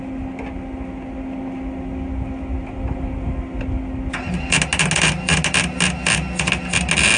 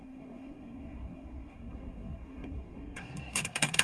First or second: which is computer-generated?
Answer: second